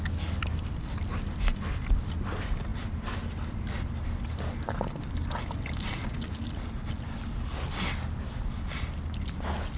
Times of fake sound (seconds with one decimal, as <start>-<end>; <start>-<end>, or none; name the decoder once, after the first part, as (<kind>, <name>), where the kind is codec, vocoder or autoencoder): none